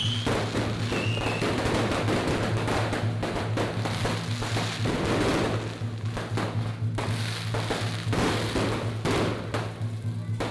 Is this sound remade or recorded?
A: recorded